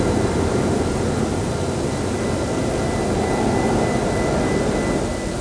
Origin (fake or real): real